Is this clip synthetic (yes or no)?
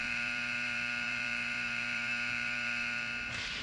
yes